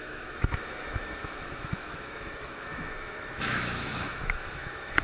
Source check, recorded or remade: remade